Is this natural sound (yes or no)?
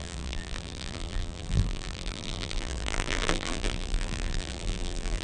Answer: no